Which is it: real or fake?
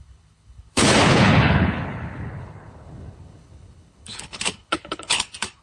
fake